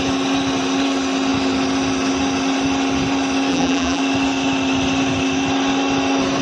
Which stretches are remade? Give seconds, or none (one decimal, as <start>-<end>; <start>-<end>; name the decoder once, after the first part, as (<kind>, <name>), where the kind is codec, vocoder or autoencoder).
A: 3.5-4.0 (vocoder, BigVGAN v2)